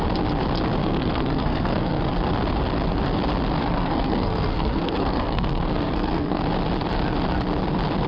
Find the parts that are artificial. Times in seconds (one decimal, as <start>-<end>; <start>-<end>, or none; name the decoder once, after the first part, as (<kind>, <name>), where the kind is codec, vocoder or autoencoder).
0.8-2.0 (codec, SNAC); 3.6-6.4

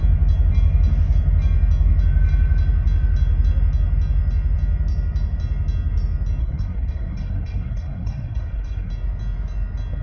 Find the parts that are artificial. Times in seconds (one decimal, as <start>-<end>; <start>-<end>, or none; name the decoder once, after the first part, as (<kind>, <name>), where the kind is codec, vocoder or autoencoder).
6.4-8.9 (codec, SNAC)

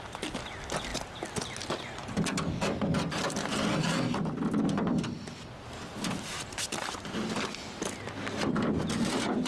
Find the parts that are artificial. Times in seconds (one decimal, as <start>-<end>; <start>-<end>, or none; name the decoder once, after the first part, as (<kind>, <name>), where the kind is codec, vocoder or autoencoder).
none

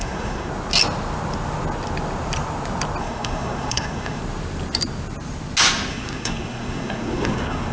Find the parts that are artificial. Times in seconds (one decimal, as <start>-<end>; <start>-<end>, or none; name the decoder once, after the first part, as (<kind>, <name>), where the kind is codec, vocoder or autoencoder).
0.0-0.5 (codec, SNAC); 3.0-4.2; 5.9-7.7